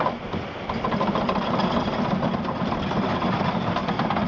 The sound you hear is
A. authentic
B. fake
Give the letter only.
A